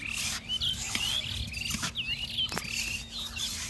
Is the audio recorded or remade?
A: recorded